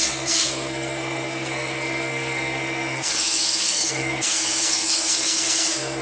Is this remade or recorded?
remade